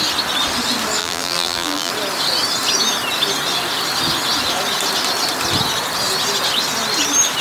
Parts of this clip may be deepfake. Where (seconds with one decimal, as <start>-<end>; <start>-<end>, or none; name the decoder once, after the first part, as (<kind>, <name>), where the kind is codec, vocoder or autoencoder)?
1.0-1.9 (vocoder, BigVGAN v2)